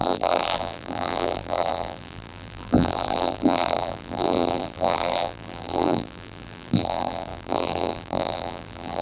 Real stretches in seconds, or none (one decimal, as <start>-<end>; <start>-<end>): none